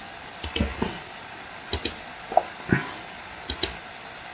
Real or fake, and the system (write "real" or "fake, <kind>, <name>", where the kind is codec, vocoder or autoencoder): real